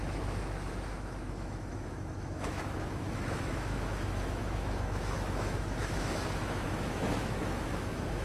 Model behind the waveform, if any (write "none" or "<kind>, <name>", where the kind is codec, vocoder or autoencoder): autoencoder, DAC-VAE